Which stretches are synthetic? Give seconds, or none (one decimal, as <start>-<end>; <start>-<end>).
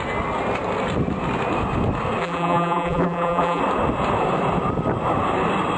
2.2-3.6